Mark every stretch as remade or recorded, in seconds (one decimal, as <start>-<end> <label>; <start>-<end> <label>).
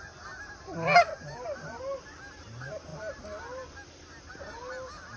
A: 0.0-5.2 recorded